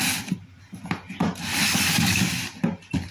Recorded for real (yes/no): yes